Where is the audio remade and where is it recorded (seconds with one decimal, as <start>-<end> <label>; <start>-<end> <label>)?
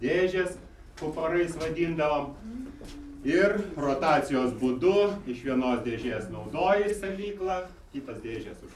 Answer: 0.0-6.9 recorded; 6.9-8.1 remade; 8.1-8.8 recorded